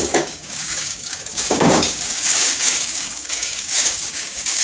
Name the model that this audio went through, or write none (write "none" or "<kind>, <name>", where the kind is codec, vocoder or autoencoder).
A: codec, DAC